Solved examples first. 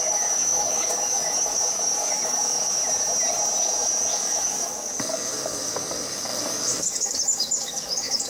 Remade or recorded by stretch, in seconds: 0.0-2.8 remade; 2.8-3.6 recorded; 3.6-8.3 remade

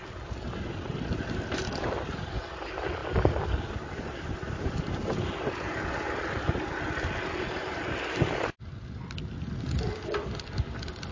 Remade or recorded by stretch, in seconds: 0.0-11.1 recorded

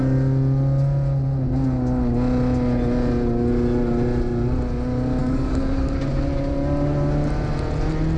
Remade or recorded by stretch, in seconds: 0.0-5.2 recorded; 5.2-6.0 remade; 6.0-8.2 recorded

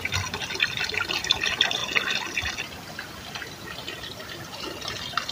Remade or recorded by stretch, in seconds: 0.0-5.3 recorded

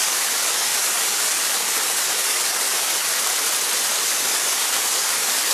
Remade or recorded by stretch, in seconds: 0.0-3.0 remade; 3.0-3.9 recorded; 3.9-5.5 remade

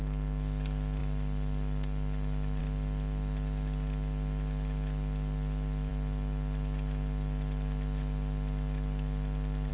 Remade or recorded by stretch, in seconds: 0.0-9.7 recorded

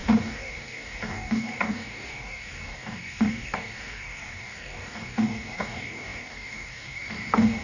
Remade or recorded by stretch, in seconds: 0.0-7.6 remade